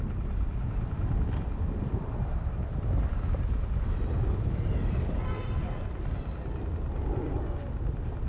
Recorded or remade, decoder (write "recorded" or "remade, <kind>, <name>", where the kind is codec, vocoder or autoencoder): recorded